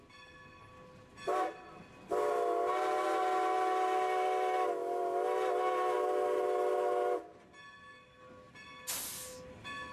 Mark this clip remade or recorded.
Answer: recorded